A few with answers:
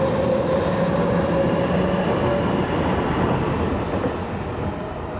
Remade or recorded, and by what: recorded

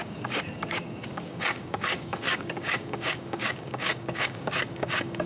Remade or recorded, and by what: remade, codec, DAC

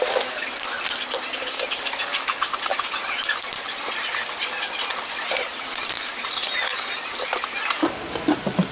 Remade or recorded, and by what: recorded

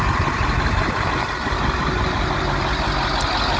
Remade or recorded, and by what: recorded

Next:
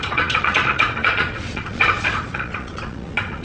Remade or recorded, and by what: remade, vocoder, Vocos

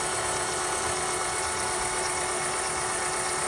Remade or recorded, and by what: recorded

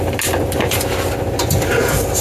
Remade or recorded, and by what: recorded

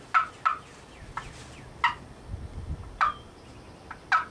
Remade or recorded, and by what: recorded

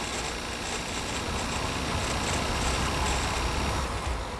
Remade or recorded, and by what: recorded